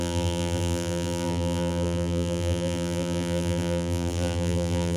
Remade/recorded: remade